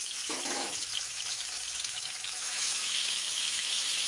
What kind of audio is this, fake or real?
fake